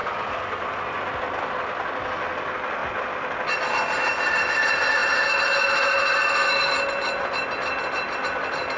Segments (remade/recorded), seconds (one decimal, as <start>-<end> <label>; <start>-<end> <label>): 0.0-8.8 recorded